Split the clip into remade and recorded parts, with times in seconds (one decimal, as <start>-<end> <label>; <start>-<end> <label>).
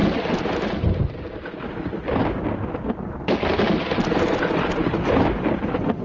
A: 0.0-6.0 recorded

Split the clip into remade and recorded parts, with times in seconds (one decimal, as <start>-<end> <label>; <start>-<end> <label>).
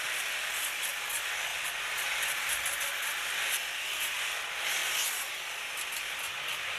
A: 0.0-4.8 recorded; 4.8-6.8 remade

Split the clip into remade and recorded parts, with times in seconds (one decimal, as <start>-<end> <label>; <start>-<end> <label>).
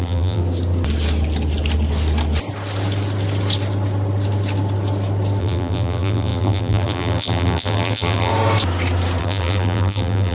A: 0.0-0.4 remade; 0.4-5.4 recorded; 5.4-8.3 remade; 8.3-9.2 recorded; 9.2-10.3 remade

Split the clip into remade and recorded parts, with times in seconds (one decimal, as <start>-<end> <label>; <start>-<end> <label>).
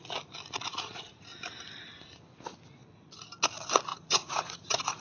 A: 0.0-0.7 recorded; 0.7-1.2 remade; 1.2-3.9 recorded; 3.9-5.0 remade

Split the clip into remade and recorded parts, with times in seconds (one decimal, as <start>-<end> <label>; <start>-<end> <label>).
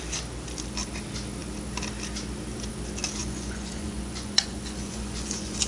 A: 0.0-3.2 recorded; 3.2-5.7 remade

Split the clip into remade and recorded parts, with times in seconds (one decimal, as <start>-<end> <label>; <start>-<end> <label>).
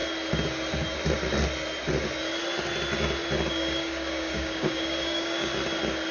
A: 0.0-3.5 recorded; 3.5-5.5 remade; 5.5-6.1 recorded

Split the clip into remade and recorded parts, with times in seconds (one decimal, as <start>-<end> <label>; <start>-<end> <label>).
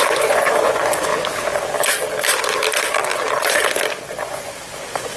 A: 0.0-1.1 remade; 1.1-4.2 recorded; 4.2-5.2 remade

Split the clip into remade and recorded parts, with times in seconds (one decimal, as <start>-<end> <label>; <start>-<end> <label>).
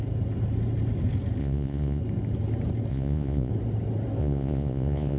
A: 0.0-1.4 recorded; 1.4-2.0 remade; 2.0-2.9 recorded; 2.9-3.5 remade; 3.5-4.2 recorded; 4.2-5.2 remade